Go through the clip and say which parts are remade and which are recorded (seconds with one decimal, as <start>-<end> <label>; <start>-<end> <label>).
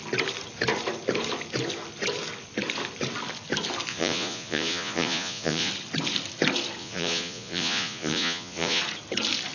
0.0-3.9 recorded; 3.9-5.7 remade; 5.7-6.8 recorded; 6.8-8.8 remade; 8.8-9.5 recorded